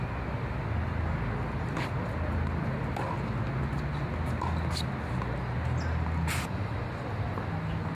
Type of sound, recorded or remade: recorded